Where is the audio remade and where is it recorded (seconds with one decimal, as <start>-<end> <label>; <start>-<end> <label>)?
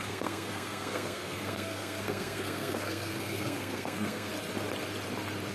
0.0-4.3 remade; 4.3-5.5 recorded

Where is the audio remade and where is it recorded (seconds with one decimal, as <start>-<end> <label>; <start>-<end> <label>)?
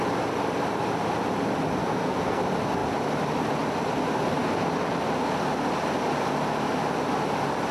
0.0-1.8 recorded; 1.8-2.4 remade; 2.4-7.7 recorded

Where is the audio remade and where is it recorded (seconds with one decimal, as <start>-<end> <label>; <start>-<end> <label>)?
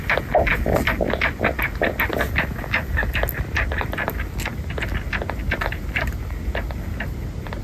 0.0-7.6 recorded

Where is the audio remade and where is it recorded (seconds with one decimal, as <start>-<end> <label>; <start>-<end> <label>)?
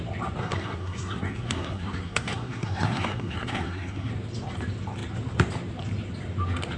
0.0-0.4 recorded; 0.4-4.1 remade; 4.1-6.8 recorded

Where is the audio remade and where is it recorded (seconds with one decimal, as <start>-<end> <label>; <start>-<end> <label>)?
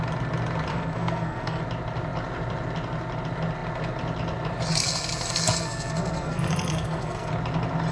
0.0-0.7 recorded; 0.7-1.6 remade; 1.6-4.8 recorded; 4.8-7.3 remade; 7.3-7.9 recorded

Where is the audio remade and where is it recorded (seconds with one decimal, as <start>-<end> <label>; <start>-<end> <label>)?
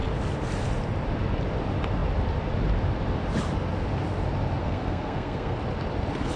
0.0-4.6 recorded; 4.6-5.6 remade; 5.6-6.4 recorded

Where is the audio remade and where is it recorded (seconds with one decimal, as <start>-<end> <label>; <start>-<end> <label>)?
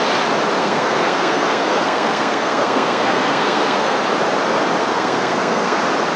0.0-0.6 recorded; 0.6-4.0 remade; 4.0-4.8 recorded; 4.8-5.8 remade; 5.8-6.2 recorded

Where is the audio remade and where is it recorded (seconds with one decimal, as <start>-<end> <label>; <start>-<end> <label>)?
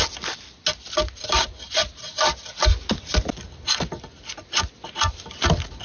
0.0-5.8 recorded